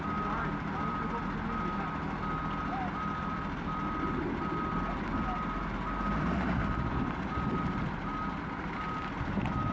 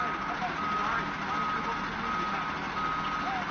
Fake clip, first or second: first